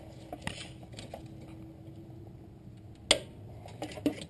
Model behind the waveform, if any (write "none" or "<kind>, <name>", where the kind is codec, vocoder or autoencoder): none